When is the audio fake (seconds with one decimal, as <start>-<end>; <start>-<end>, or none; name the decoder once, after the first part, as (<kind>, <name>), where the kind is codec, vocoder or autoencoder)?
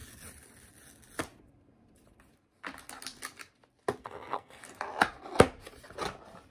4.0-4.6 (codec, SNAC)